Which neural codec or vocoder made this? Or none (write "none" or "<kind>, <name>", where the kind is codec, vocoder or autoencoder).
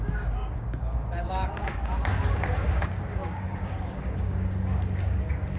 codec, DAC